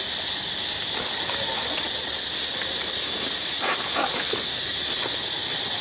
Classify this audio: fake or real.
real